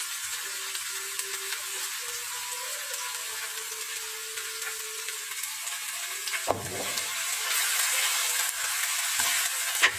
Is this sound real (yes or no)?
yes